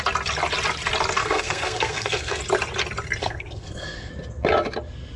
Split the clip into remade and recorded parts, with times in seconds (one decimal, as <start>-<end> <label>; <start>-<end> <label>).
0.0-1.2 recorded; 1.2-2.4 remade; 2.4-3.2 recorded; 3.2-4.1 remade; 4.1-5.2 recorded